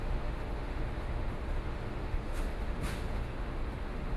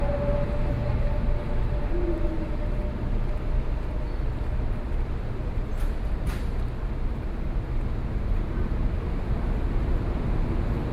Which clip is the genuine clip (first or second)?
second